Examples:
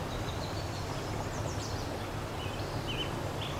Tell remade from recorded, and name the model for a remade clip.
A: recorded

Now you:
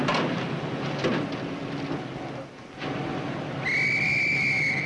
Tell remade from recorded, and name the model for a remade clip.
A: recorded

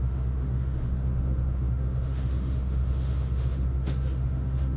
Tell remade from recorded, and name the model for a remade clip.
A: remade, autoencoder, DAC-VAE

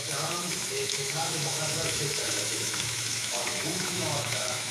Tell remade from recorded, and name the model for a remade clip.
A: remade, autoencoder, DAC-VAE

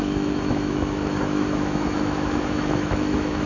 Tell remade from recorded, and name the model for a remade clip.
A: remade, autoencoder, DAC-VAE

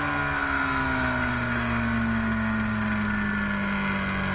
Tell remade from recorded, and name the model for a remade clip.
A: recorded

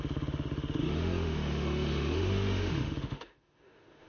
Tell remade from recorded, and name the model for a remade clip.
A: remade, autoencoder, DAC-VAE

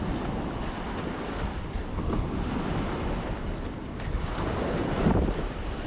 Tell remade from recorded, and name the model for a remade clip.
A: recorded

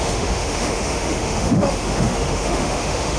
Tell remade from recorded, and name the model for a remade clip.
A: remade, autoencoder, DAC-VAE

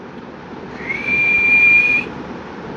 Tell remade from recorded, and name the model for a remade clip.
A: recorded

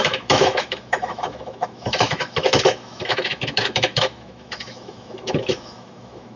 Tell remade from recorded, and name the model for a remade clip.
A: remade, autoencoder, DAC-VAE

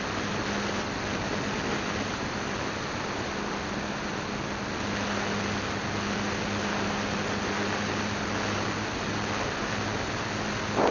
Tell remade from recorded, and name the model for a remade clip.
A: recorded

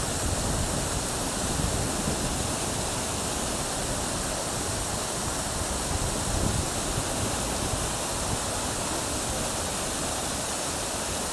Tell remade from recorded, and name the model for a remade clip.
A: recorded